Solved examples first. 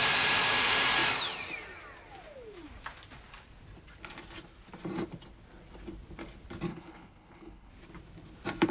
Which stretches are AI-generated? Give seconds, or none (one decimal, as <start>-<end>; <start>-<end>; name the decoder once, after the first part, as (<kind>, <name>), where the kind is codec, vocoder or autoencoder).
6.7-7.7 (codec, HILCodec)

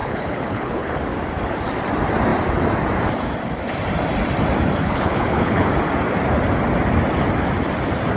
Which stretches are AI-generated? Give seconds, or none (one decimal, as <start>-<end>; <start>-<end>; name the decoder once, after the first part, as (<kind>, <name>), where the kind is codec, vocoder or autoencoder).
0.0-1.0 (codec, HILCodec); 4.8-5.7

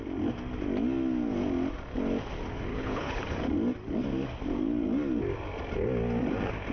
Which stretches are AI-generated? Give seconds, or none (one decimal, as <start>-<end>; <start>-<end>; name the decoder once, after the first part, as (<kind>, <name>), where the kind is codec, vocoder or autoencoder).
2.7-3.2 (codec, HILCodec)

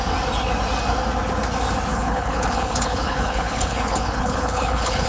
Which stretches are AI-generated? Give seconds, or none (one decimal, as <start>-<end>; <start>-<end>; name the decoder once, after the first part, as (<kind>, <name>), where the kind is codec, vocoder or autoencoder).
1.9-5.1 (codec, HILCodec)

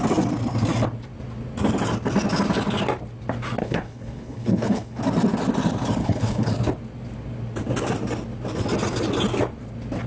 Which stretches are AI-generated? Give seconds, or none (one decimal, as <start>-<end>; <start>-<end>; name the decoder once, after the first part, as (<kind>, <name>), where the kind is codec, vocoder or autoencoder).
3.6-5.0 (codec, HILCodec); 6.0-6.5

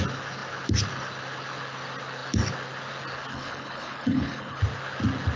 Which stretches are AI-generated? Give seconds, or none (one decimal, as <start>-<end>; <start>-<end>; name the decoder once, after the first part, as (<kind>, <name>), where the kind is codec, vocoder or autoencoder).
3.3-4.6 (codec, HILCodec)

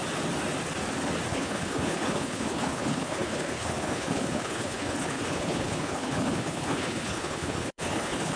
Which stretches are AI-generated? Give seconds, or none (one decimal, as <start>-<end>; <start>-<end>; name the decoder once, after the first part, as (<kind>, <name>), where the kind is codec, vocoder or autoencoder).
1.3-8.4 (codec, HILCodec)